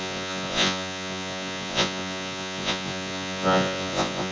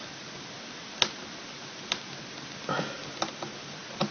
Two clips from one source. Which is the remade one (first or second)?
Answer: first